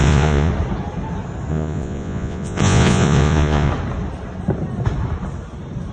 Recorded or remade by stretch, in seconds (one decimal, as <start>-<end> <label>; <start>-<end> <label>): 0.0-0.5 remade; 0.5-1.5 recorded; 1.5-3.7 remade; 3.7-5.9 recorded